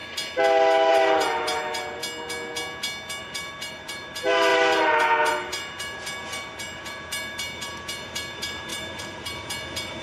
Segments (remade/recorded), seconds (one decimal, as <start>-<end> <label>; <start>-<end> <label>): 0.0-0.9 recorded; 0.9-2.0 remade; 2.0-3.2 recorded; 3.2-10.0 remade